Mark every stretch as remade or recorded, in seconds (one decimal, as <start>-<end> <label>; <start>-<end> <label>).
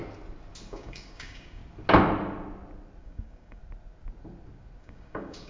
0.0-0.7 recorded; 0.7-1.6 remade; 1.6-3.0 recorded; 3.0-3.6 remade; 3.6-4.8 recorded; 4.8-5.5 remade